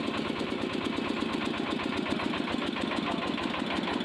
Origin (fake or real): real